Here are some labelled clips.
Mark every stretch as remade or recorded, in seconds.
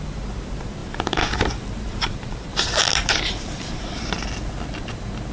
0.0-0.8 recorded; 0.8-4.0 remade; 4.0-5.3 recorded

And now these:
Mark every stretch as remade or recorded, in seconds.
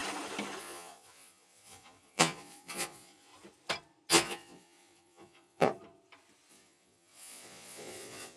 0.0-0.6 recorded; 0.6-3.3 remade; 3.3-4.1 recorded; 4.1-5.7 remade; 5.7-6.5 recorded; 6.5-8.4 remade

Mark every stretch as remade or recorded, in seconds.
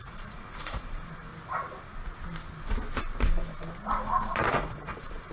0.0-1.3 remade; 1.3-4.5 recorded; 4.5-5.3 remade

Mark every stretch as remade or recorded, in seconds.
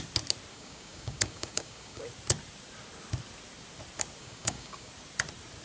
0.0-0.5 recorded; 0.5-2.0 remade; 2.0-4.2 recorded; 4.2-4.9 remade; 4.9-5.6 recorded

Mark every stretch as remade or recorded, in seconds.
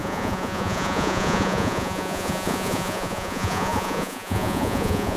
0.0-5.2 remade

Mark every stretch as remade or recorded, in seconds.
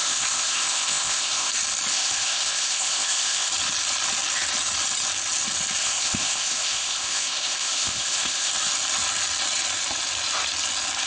0.0-1.5 remade; 1.5-1.9 recorded; 1.9-3.5 remade; 3.5-5.8 recorded; 5.8-8.5 remade; 8.5-11.1 recorded